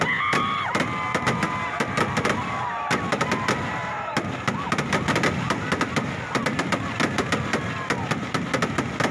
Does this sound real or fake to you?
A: real